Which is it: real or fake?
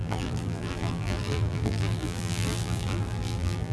fake